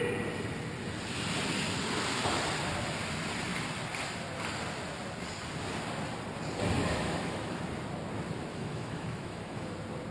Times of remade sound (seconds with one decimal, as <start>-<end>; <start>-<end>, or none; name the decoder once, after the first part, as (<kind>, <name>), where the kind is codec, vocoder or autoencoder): 6.8-7.6 (autoencoder, DAC-VAE); 8.5-9.7